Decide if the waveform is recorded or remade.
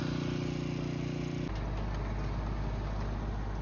recorded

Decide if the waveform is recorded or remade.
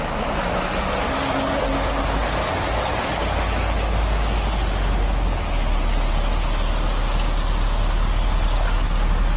recorded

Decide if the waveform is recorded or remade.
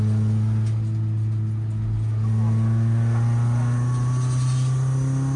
recorded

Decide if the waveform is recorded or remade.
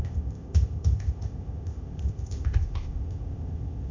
remade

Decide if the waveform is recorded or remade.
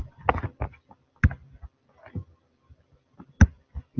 recorded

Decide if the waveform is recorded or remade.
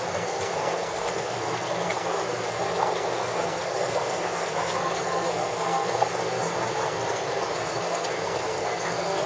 remade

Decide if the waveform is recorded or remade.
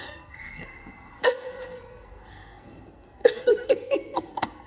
remade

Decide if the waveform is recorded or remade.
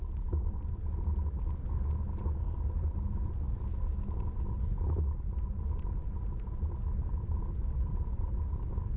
recorded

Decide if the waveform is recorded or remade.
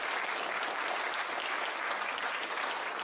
recorded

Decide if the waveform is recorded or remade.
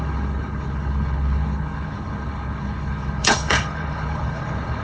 remade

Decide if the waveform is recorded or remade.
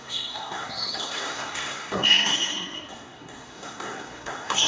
remade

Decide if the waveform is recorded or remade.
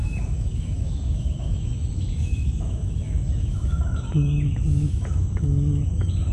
remade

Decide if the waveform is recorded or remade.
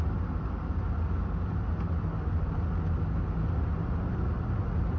recorded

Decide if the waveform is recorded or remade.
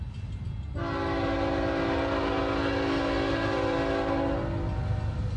recorded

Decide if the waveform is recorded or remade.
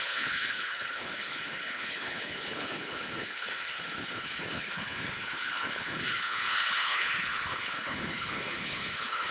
remade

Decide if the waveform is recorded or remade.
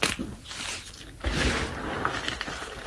recorded